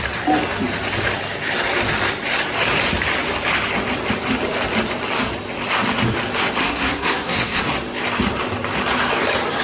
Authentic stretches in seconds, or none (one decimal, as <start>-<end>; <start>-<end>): 0.0-6.6; 7.6-9.6